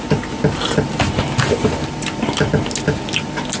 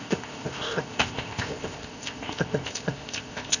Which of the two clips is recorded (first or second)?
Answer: first